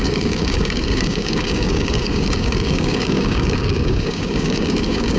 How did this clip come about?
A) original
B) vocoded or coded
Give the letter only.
B